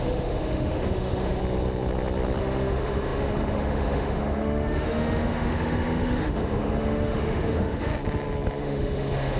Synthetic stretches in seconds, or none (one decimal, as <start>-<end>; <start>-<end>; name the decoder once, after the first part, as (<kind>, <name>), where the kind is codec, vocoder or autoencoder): 0.0-1.4 (autoencoder, DAC-VAE); 2.4-7.9; 8.6-9.4